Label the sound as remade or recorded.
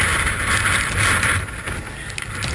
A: recorded